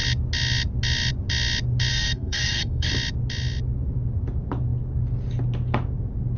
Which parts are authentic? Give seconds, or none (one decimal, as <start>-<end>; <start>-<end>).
0.0-1.9; 2.9-6.4